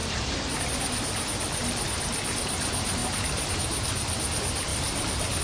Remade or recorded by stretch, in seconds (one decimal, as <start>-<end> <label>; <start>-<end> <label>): 0.0-0.6 remade; 0.6-4.7 recorded; 4.7-5.4 remade